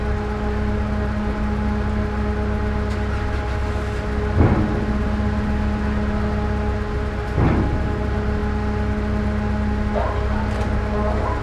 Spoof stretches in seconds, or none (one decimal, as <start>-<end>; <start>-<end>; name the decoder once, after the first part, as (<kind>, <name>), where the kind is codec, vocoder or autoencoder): none